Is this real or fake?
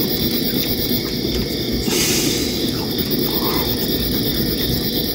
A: real